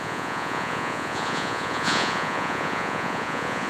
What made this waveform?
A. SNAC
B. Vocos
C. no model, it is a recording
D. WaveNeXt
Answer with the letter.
B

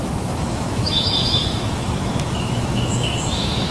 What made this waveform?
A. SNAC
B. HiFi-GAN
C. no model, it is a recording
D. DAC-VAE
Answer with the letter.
D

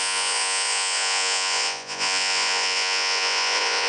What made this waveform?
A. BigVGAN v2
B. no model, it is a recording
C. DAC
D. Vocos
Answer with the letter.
D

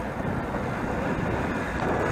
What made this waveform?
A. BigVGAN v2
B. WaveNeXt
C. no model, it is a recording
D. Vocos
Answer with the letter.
C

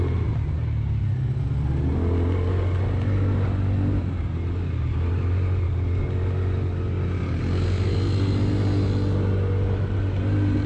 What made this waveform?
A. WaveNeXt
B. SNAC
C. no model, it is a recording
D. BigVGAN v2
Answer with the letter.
C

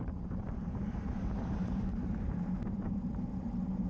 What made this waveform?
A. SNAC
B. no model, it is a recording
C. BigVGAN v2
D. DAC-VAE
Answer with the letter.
C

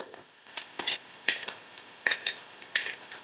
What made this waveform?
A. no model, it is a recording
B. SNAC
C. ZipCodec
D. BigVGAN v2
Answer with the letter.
C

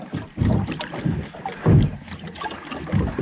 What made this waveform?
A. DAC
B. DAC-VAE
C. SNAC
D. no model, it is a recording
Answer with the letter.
D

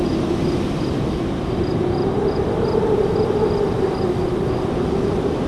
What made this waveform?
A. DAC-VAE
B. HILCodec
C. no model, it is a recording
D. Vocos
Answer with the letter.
C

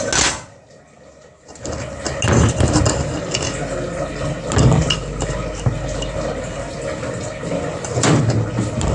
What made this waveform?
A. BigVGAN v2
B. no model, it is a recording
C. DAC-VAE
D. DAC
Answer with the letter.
B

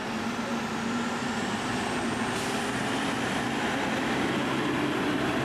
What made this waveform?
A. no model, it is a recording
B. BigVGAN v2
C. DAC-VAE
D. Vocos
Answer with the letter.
B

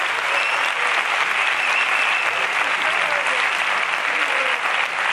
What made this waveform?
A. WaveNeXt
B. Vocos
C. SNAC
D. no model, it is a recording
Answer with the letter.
D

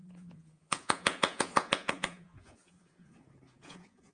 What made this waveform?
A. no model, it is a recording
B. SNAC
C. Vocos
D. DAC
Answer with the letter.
C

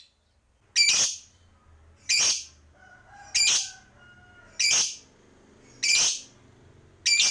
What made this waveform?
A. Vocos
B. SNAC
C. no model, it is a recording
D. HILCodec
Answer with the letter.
C